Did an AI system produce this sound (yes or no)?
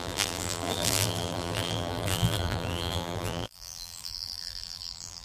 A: yes